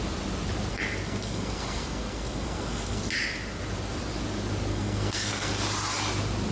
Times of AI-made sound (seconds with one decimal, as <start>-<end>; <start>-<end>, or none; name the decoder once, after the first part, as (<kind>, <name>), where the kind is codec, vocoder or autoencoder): 0.7-3.1 (codec, SNAC); 4.7-5.6